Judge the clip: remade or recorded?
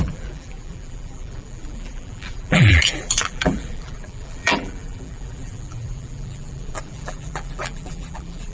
remade